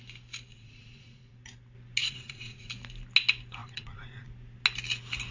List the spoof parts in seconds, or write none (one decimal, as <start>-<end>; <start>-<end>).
0.5-1.3; 2.0-2.7; 3.6-4.3